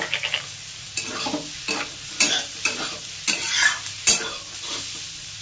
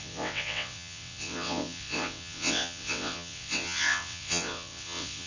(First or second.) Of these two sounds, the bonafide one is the first